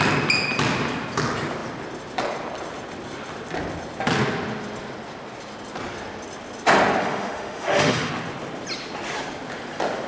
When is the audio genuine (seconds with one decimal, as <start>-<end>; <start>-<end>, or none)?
0.0-7.0; 8.1-10.1